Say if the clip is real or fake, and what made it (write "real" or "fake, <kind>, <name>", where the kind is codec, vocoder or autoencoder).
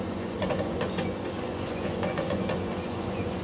fake, vocoder, Vocos